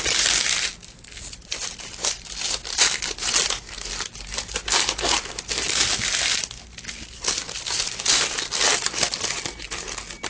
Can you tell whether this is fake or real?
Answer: real